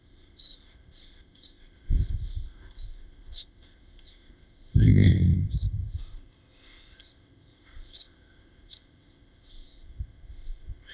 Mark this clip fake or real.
fake